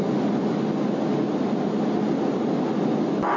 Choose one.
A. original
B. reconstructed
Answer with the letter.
A